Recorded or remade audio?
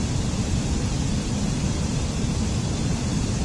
recorded